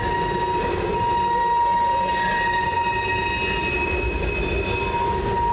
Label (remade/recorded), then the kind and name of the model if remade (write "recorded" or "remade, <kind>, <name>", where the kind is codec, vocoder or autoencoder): recorded